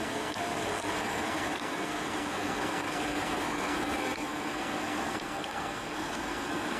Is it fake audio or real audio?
fake